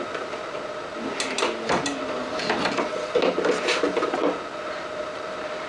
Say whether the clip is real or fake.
real